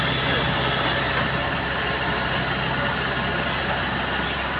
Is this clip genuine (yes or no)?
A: yes